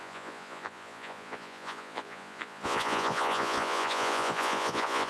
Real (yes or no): no